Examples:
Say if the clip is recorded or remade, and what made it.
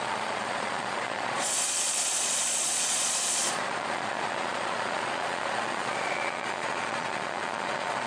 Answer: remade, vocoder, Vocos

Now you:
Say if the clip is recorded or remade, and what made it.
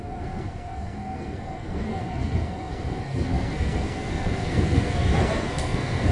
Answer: remade, codec, SNAC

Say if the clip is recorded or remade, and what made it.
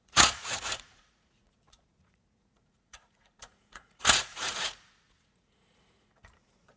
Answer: remade, vocoder, Vocos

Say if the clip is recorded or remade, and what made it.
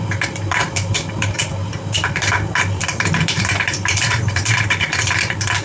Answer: remade, vocoder, BigVGAN v2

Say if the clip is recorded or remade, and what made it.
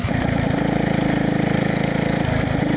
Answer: recorded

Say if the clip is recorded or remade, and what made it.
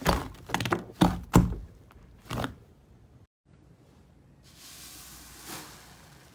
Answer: recorded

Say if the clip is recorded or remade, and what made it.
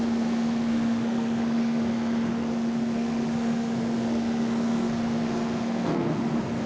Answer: remade, codec, SNAC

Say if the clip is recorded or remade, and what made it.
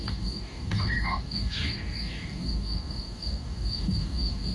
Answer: remade, codec, DAC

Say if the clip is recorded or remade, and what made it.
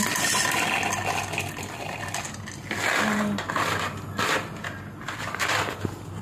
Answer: recorded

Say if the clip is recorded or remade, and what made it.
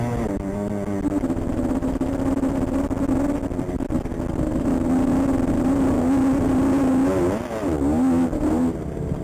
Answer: recorded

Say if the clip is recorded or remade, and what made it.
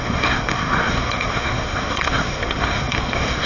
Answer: remade, codec, SNAC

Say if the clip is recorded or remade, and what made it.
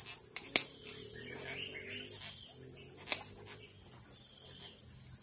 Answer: recorded